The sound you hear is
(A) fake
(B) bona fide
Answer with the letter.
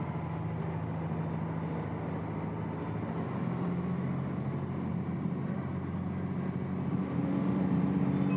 B